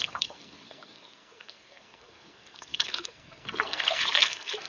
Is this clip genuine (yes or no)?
no